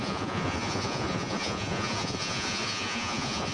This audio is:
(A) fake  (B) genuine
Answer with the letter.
A